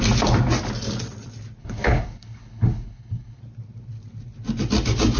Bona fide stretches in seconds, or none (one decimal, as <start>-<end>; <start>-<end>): 0.0-1.6; 3.4-5.2